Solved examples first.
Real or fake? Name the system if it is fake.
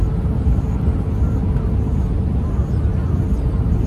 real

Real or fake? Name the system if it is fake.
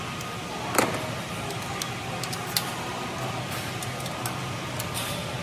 real